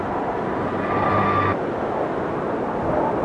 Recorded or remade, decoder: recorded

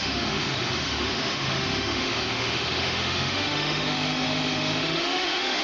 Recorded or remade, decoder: remade, autoencoder, DAC-VAE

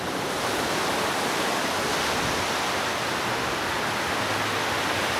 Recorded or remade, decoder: recorded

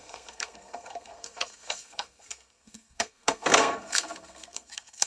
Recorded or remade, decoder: remade, codec, SNAC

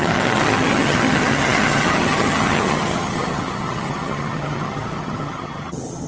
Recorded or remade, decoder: remade, vocoder, HiFi-GAN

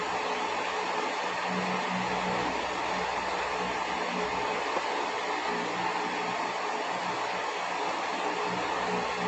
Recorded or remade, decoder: recorded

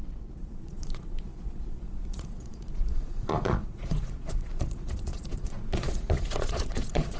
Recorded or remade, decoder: remade, vocoder, Vocos